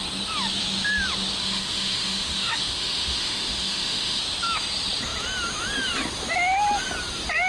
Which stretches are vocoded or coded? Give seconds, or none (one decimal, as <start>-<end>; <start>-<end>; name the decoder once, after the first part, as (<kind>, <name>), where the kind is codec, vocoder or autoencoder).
1.4-4.2 (autoencoder, DAC-VAE)